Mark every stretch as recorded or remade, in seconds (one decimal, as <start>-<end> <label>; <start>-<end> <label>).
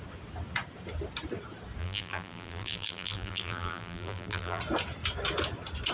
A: 0.0-1.8 recorded; 1.8-4.6 remade; 4.6-5.9 recorded